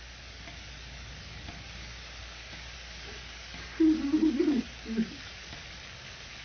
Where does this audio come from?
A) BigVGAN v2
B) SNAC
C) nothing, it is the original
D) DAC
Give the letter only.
D